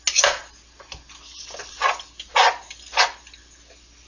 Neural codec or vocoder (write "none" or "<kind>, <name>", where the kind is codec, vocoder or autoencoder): none